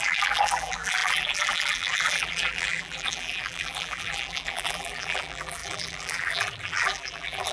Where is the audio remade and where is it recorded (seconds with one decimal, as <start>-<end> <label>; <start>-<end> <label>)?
0.0-7.5 remade